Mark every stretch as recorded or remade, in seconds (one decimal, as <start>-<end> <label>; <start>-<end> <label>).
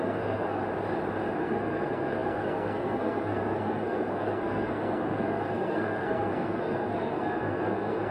0.0-0.6 remade; 0.6-1.4 recorded; 1.4-8.1 remade